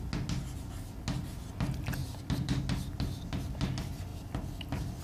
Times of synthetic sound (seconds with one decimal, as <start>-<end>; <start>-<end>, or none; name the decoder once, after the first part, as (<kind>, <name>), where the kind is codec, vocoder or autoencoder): 2.0-2.6 (vocoder, BigVGAN v2); 4.1-5.0